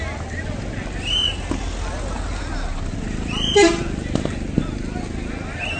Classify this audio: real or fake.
real